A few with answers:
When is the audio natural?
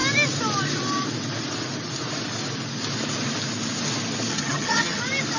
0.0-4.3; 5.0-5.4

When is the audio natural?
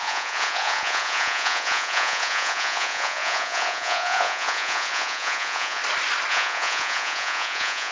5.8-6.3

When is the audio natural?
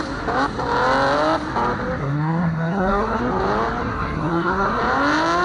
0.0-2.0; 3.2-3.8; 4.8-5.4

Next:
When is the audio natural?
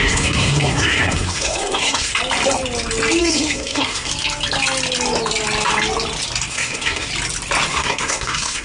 2.1-3.2; 4.1-6.5; 7.1-7.7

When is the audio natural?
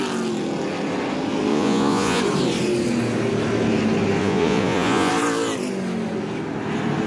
0.0-1.5; 2.2-4.2; 5.1-7.1